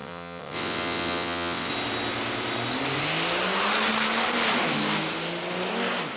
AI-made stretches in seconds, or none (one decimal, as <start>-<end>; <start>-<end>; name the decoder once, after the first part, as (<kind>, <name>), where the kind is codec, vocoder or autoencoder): 0.0-1.7 (vocoder, WaveNeXt)